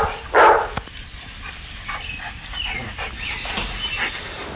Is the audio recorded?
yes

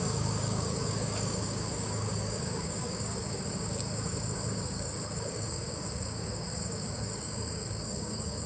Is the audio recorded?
no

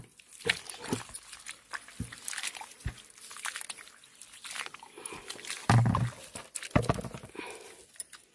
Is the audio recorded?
yes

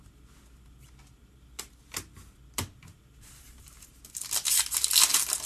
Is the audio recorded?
yes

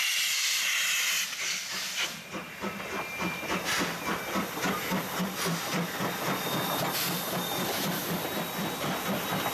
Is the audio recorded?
yes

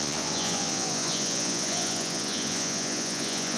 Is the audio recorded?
no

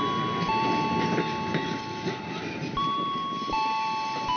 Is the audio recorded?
yes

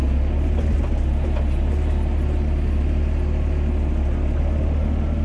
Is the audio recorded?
yes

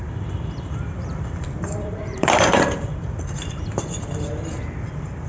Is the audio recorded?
no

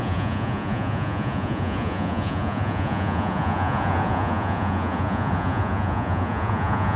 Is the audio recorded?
no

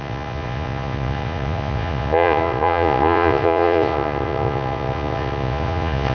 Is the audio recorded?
no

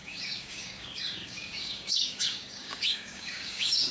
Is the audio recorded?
no